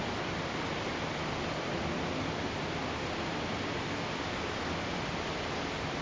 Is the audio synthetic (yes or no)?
no